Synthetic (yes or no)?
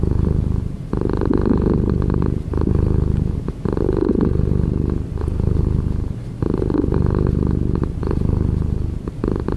no